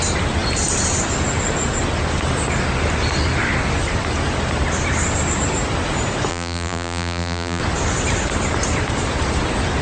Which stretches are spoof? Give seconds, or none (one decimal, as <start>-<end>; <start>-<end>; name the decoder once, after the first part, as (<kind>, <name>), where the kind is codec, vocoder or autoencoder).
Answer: 6.3-7.6 (vocoder, BigVGAN v2)